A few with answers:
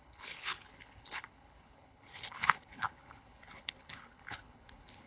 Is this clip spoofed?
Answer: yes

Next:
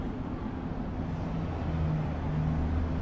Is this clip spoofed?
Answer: no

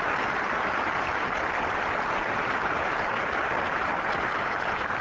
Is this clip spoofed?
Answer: no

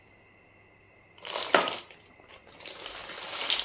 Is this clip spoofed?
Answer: no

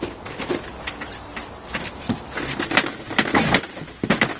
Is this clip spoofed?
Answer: no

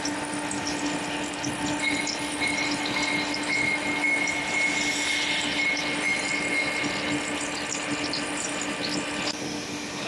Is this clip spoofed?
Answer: no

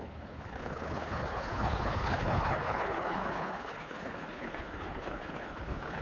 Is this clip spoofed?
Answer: yes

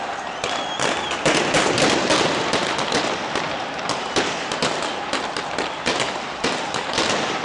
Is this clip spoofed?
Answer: no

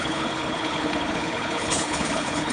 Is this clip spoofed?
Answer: yes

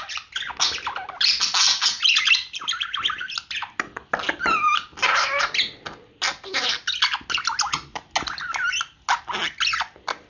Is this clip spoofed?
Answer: no